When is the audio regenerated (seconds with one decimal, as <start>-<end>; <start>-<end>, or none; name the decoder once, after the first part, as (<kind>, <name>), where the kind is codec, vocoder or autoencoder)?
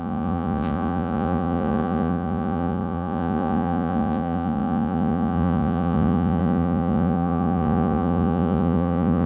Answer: 0.0-9.3 (vocoder, Vocos)